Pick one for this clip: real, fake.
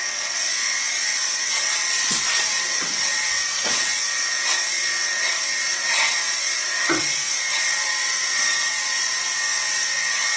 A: fake